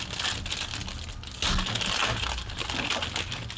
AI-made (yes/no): no